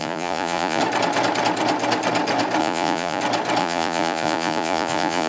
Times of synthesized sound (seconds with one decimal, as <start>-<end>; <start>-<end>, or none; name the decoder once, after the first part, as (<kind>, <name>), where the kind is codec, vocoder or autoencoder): 0.0-0.8 (vocoder, Vocos); 2.6-3.2; 3.6-5.3